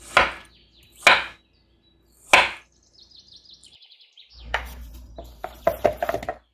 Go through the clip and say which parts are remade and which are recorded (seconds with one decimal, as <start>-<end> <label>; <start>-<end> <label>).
0.0-3.6 recorded; 3.6-6.1 remade; 6.1-6.5 recorded